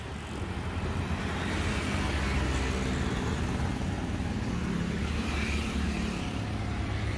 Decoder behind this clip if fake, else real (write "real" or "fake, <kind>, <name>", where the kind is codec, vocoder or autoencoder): real